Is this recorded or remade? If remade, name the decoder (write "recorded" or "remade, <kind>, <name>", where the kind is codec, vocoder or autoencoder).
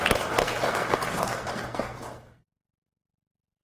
remade, codec, SNAC